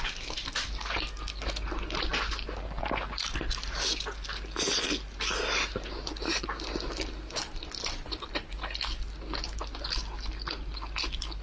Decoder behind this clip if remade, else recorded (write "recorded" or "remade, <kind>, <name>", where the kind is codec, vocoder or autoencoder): recorded